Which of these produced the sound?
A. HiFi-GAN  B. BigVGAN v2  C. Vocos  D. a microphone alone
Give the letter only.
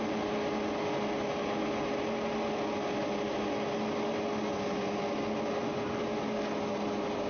D